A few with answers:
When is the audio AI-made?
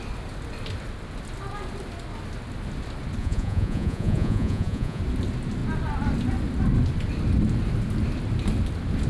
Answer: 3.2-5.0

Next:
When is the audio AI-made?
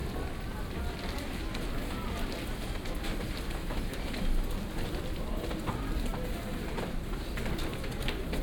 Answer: none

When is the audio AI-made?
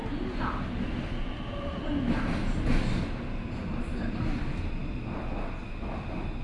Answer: none